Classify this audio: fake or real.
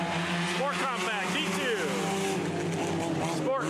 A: real